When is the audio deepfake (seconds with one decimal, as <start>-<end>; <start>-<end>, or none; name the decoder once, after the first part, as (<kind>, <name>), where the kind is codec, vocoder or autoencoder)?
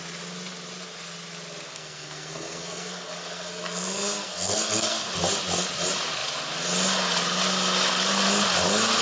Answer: 1.7-5.2 (codec, SNAC)